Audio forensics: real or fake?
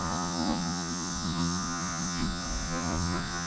fake